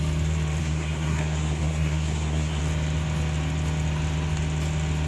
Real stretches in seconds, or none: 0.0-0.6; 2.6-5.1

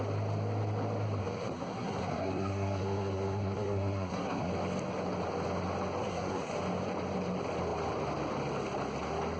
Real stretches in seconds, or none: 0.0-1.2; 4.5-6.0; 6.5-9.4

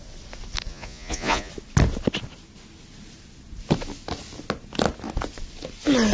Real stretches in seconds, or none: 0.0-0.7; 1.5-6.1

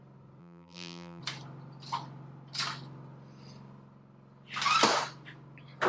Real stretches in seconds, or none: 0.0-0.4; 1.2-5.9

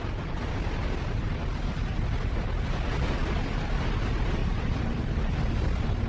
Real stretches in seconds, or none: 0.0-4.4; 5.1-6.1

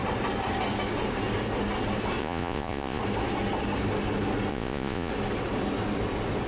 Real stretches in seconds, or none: 0.0-2.2; 3.0-4.5; 5.1-6.5

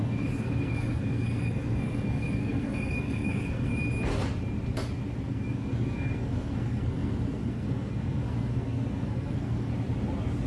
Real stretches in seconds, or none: 3.7-5.3; 9.7-10.5